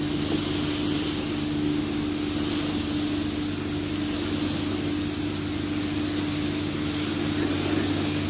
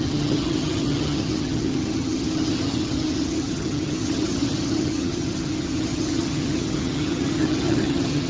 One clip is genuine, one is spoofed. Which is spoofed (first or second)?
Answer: second